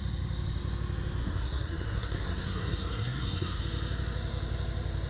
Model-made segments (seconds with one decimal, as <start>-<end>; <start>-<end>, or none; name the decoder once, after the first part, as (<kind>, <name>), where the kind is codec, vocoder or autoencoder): 1.2-3.6 (codec, SNAC)